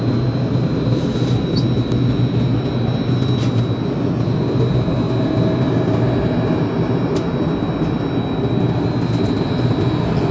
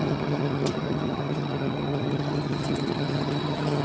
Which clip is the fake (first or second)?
second